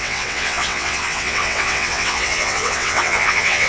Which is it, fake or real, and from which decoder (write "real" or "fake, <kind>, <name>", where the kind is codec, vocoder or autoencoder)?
fake, vocoder, WaveNeXt